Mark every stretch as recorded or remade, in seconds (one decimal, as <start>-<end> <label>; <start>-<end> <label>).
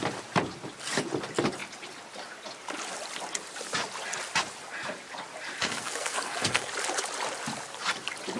0.0-5.6 recorded; 5.6-6.7 remade; 6.7-8.4 recorded